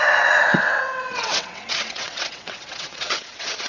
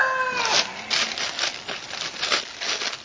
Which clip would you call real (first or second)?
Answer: second